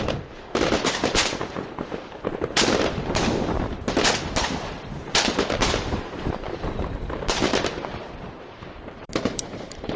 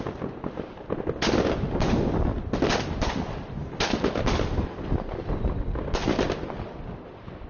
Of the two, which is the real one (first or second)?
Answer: second